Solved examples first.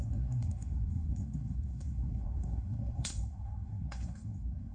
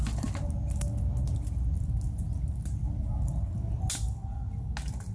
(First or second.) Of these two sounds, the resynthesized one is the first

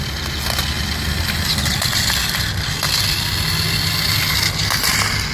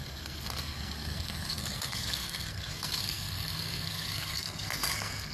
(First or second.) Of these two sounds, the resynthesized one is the second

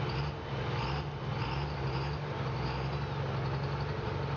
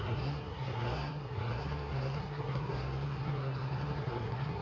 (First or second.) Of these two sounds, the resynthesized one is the second